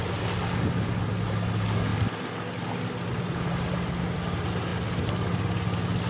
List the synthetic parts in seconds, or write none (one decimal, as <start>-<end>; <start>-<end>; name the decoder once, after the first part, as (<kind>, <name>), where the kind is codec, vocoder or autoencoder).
none